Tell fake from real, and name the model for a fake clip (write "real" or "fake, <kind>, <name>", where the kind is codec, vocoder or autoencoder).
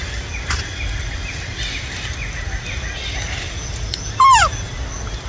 real